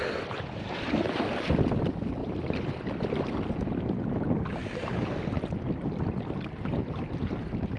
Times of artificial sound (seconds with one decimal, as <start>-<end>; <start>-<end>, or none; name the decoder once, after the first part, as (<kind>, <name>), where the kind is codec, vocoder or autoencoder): 0.0-2.2 (vocoder, BigVGAN v2); 6.0-7.8